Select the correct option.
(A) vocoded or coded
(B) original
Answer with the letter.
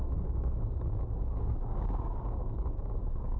A